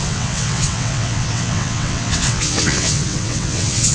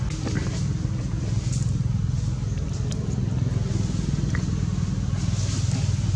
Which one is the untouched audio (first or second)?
second